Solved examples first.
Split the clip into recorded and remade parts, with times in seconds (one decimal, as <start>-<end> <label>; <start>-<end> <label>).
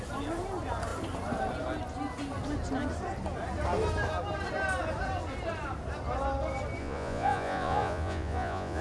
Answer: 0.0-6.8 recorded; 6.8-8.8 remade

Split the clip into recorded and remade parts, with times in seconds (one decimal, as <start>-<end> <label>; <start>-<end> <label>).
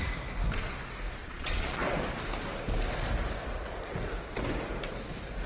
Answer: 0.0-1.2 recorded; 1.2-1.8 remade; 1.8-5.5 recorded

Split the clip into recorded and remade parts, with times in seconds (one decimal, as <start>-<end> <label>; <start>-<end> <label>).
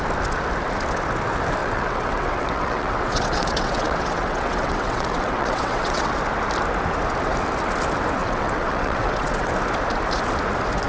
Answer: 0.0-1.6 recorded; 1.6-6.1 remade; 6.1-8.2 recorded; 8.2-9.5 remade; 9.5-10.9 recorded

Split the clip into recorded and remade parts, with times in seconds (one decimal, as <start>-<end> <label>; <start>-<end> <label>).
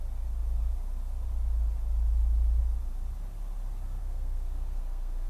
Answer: 0.0-4.0 recorded; 4.0-5.3 remade